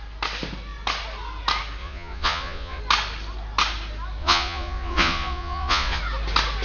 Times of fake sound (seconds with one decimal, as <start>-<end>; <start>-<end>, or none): 1.8-2.8; 4.2-6.0